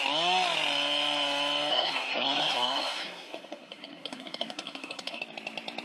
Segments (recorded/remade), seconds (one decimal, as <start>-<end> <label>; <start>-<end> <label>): 0.0-1.7 recorded; 1.7-5.2 remade; 5.2-5.8 recorded

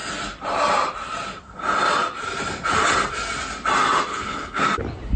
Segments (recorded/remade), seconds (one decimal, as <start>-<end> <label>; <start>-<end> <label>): 0.0-4.1 recorded; 4.1-4.6 remade; 4.6-5.2 recorded

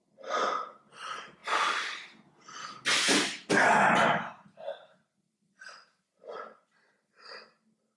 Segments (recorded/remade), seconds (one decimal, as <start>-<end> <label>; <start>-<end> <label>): 0.0-8.0 recorded

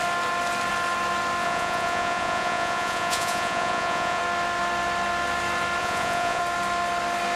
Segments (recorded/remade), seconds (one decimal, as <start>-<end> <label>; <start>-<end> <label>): 0.0-1.4 recorded; 1.4-4.2 remade; 4.2-5.8 recorded; 5.8-6.4 remade; 6.4-7.4 recorded

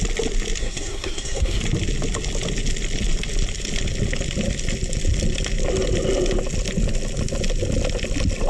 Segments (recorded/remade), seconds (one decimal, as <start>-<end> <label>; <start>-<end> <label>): 0.0-0.6 recorded; 0.6-1.6 remade; 1.6-8.5 recorded

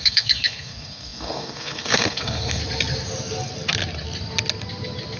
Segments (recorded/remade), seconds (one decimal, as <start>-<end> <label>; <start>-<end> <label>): 0.0-2.6 remade; 2.6-5.2 recorded